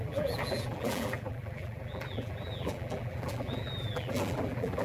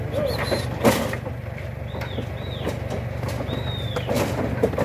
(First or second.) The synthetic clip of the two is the first